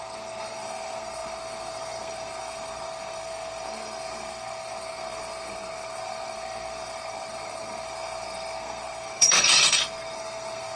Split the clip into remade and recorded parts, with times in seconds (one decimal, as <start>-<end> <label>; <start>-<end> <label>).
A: 0.0-10.8 remade